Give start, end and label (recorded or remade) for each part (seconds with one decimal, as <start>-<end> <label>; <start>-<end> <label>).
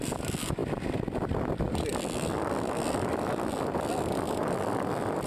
0.0-0.6 recorded; 0.6-1.4 remade; 1.4-5.3 recorded